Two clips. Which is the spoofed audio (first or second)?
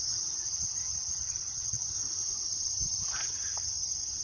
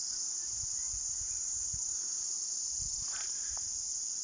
first